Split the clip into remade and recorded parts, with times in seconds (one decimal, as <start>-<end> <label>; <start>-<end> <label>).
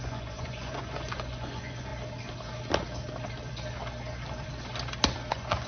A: 0.0-1.9 remade; 1.9-5.3 recorded; 5.3-5.7 remade